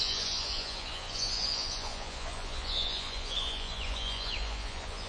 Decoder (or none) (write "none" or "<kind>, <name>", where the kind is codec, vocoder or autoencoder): vocoder, Vocos